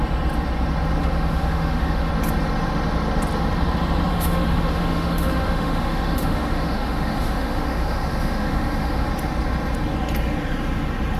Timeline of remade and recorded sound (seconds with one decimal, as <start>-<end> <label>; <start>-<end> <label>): 0.0-1.0 recorded; 1.0-2.1 remade; 2.1-4.1 recorded; 4.1-9.1 remade; 9.1-11.2 recorded